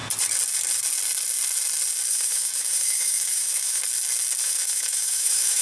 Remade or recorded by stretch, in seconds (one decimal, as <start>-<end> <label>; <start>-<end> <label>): 0.0-2.1 recorded; 2.1-3.8 remade; 3.8-4.4 recorded; 4.4-5.6 remade